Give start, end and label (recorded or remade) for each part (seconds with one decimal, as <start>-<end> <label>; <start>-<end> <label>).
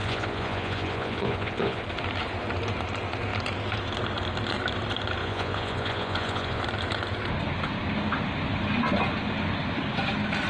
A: 0.0-1.8 remade; 1.8-5.2 recorded; 5.2-6.6 remade; 6.6-10.5 recorded